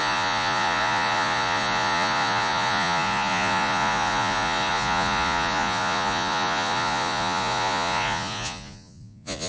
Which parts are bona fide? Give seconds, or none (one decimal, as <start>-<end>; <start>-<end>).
none